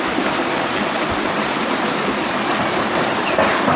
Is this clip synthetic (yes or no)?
no